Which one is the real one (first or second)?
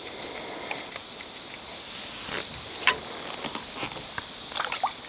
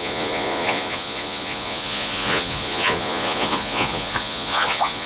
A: first